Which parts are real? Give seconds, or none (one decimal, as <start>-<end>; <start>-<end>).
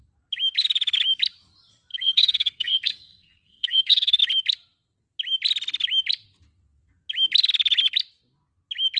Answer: 0.0-1.9; 4.2-9.0